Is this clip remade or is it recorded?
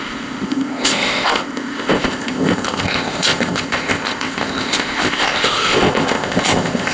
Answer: remade